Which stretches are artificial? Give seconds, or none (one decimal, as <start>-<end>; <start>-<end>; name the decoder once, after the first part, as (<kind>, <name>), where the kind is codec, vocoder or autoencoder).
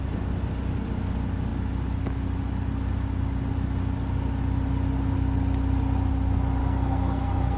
6.6-7.6 (codec, SNAC)